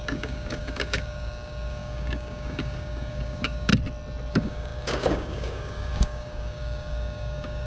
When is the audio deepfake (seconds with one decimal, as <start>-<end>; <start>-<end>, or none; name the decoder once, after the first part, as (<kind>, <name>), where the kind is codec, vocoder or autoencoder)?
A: 0.0-3.7 (codec, DAC); 4.3-7.7